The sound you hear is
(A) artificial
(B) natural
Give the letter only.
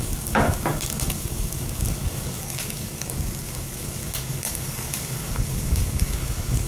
A